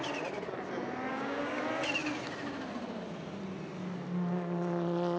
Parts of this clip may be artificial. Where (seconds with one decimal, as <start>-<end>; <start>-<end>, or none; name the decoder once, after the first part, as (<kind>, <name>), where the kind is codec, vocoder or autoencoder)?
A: 1.1-1.6 (codec, DAC)